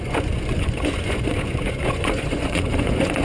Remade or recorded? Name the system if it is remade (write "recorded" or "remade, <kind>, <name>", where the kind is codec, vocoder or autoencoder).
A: remade, vocoder, Vocos